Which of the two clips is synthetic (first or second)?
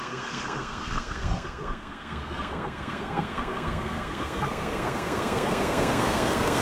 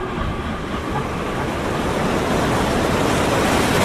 first